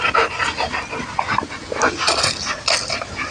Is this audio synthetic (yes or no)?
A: no